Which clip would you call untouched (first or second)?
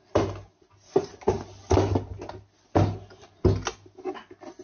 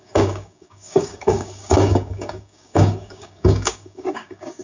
first